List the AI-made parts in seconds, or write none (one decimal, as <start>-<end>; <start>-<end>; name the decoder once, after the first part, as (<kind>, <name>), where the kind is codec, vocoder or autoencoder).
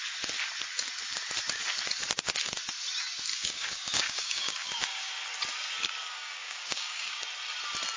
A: 3.3-5.1 (codec, DAC); 6.1-7.2